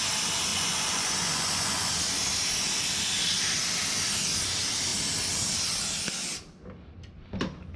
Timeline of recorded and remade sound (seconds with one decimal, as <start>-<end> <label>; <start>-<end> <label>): 0.0-0.5 recorded; 0.5-1.9 remade; 1.9-7.8 recorded